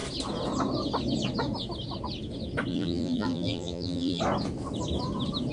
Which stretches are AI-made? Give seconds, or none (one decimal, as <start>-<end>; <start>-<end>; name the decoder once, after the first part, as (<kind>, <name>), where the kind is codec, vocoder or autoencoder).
2.7-4.2 (vocoder, BigVGAN v2)